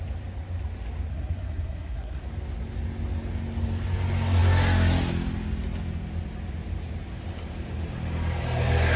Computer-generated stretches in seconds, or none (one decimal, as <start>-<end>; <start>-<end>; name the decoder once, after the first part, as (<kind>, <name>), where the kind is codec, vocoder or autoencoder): 1.1-2.2 (codec, SNAC)